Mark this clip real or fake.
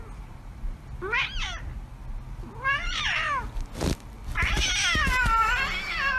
real